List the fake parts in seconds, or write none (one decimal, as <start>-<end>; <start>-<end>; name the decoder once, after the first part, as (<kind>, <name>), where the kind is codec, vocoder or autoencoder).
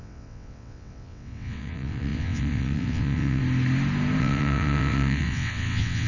0.0-3.4 (vocoder, WaveNeXt); 4.2-6.1